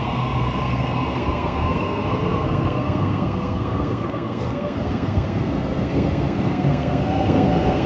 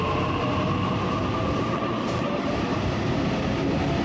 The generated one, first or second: first